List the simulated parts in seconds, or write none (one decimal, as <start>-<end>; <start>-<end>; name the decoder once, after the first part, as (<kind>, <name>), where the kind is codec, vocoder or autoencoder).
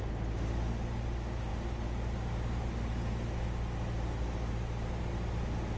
none